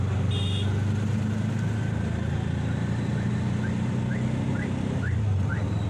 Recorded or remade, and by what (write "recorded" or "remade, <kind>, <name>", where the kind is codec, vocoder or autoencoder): recorded